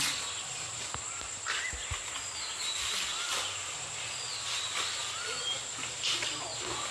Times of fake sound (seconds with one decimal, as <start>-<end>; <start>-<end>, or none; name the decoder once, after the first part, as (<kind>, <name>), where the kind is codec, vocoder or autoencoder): none